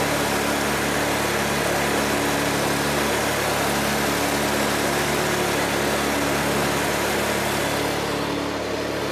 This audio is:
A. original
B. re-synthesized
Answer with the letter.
A